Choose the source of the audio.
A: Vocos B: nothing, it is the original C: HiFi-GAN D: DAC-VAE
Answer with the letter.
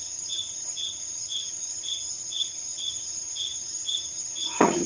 C